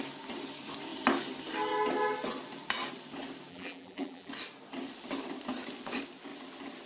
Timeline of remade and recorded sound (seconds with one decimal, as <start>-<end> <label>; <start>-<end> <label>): 0.0-3.5 recorded; 3.5-4.3 remade; 4.3-6.9 recorded